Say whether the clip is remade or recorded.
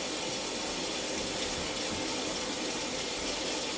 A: recorded